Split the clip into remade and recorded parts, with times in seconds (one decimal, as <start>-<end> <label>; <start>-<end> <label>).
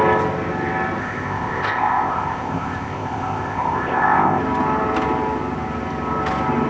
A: 0.0-1.0 recorded; 1.0-4.4 remade; 4.4-6.7 recorded